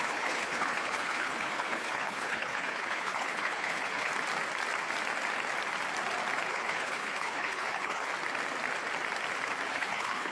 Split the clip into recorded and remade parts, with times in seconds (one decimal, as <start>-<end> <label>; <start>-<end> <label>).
0.0-4.1 remade; 4.1-6.5 recorded; 6.5-8.1 remade; 8.1-9.7 recorded; 9.7-10.3 remade